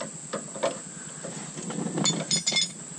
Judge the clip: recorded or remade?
recorded